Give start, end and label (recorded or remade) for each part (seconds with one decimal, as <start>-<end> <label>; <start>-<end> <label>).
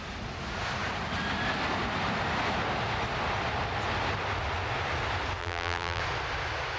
0.0-5.4 recorded; 5.4-6.0 remade; 6.0-6.8 recorded